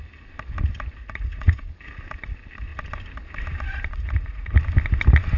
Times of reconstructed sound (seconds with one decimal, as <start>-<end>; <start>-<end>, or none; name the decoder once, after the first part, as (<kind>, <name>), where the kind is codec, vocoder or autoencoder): 1.0-1.7 (vocoder, Vocos); 3.9-4.6